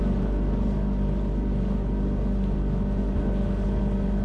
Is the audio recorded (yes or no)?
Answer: yes